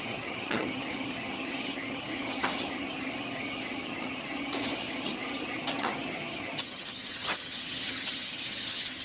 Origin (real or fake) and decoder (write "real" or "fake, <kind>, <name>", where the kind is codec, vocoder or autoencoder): fake, vocoder, HiFi-GAN